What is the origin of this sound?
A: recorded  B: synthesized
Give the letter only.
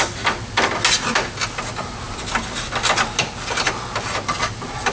A